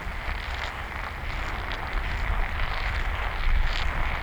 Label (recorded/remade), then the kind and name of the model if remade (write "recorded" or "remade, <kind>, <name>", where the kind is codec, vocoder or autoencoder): recorded